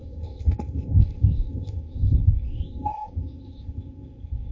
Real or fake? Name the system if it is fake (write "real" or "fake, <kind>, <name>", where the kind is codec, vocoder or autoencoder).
fake, codec, ZipCodec